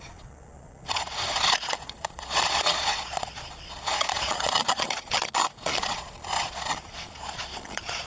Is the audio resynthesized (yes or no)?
yes